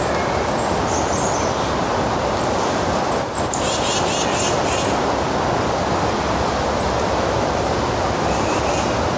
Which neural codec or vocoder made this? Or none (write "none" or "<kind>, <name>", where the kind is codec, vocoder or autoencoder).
none